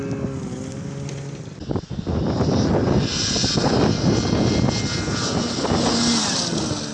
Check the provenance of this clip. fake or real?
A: real